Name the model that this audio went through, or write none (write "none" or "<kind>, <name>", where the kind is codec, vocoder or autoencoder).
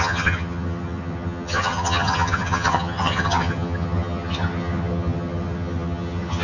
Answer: vocoder, HiFi-GAN